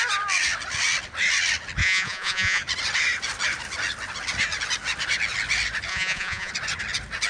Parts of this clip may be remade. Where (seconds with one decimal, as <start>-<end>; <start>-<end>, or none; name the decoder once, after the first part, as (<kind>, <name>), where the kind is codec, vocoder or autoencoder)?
1.8-2.6 (vocoder, Vocos); 5.9-6.5

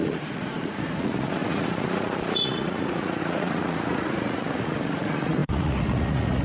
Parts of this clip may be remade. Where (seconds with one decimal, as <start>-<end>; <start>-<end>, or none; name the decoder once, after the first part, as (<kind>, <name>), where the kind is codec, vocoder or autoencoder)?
0.0-6.4 (vocoder, Vocos)

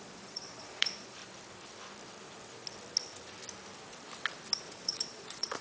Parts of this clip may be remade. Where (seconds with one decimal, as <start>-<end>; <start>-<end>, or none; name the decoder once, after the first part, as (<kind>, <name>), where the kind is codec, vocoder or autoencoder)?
0.0-1.2 (vocoder, Vocos); 4.6-5.6

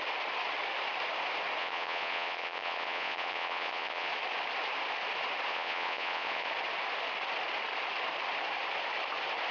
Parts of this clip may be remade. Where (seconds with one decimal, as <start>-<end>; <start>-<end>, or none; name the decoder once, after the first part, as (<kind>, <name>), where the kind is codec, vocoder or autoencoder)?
1.6-4.1 (vocoder, Vocos); 5.5-6.5